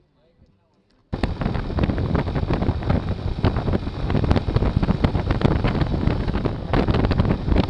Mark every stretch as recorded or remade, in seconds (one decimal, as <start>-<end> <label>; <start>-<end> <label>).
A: 0.0-1.0 recorded; 1.0-4.4 remade; 4.4-6.7 recorded; 6.7-7.7 remade